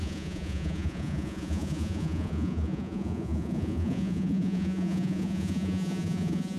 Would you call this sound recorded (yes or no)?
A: no